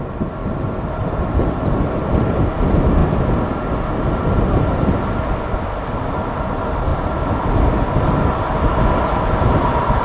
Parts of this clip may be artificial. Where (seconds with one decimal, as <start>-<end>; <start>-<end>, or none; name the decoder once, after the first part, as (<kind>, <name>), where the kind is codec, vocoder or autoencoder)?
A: none